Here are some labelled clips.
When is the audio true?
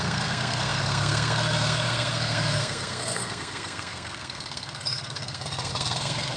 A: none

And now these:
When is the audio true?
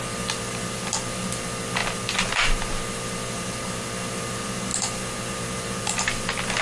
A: 0.0-6.6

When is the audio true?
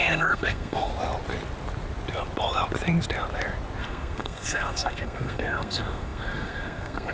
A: 0.9-3.8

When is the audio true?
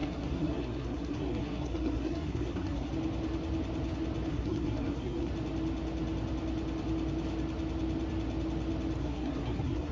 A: 2.9-4.3; 5.3-9.0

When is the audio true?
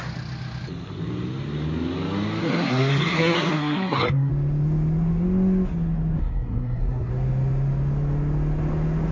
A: 0.0-2.4; 4.3-6.2; 7.1-9.1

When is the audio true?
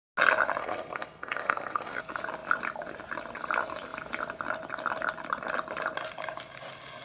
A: 0.0-0.6; 2.0-7.0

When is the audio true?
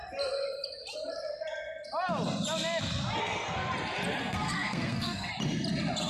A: 0.0-3.2; 3.7-4.2; 5.3-6.1